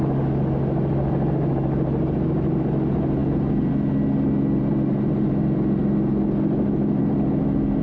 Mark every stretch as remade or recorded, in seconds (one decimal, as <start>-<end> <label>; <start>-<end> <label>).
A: 0.0-7.8 recorded